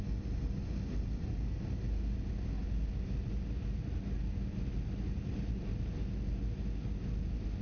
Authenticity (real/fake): real